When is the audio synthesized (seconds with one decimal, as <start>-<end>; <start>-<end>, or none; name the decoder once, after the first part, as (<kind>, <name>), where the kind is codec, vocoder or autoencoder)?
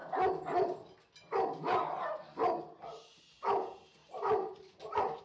4.0-5.2 (vocoder, BigVGAN v2)